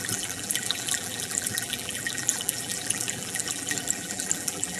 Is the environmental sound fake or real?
fake